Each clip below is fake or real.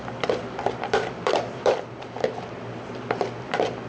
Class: fake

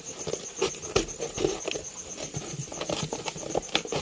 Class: real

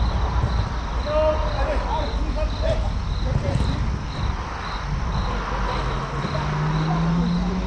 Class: real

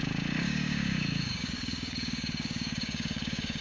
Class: fake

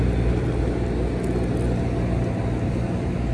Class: real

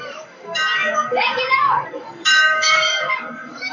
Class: fake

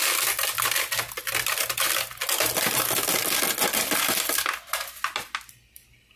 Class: real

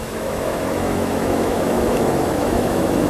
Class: fake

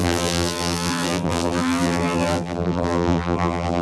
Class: fake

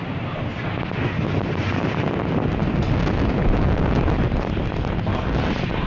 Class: real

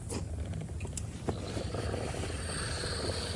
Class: real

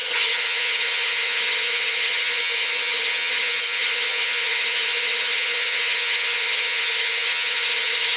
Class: fake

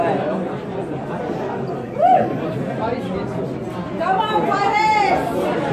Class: real